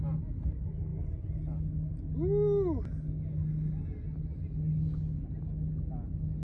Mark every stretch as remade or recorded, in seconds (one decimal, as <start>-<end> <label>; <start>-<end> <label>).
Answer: 0.0-6.4 recorded